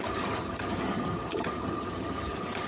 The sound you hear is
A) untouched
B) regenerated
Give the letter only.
B